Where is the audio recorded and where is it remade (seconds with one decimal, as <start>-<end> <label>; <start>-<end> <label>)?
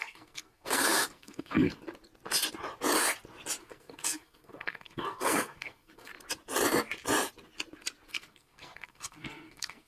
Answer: 0.0-1.8 remade; 1.8-3.6 recorded; 3.6-6.1 remade; 6.1-8.1 recorded; 8.1-9.9 remade